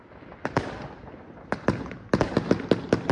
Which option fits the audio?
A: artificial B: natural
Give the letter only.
B